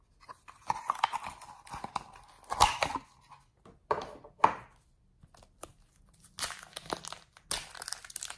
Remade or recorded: recorded